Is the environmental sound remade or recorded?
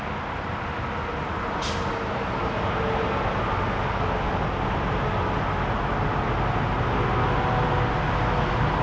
recorded